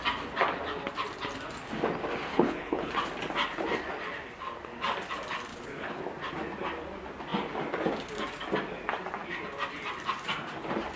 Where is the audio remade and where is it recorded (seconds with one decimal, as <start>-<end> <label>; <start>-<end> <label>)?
0.0-2.3 recorded; 2.3-2.9 remade; 2.9-5.5 recorded; 5.5-6.0 remade; 6.0-11.0 recorded